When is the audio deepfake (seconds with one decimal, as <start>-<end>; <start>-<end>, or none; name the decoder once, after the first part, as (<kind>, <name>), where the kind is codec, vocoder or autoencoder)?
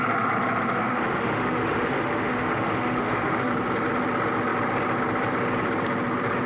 0.8-3.5 (autoencoder, DAC-VAE)